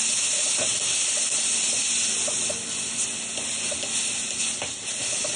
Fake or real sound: real